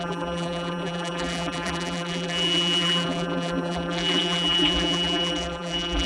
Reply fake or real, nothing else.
fake